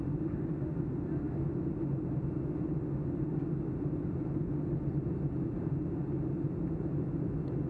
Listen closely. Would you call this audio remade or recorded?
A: recorded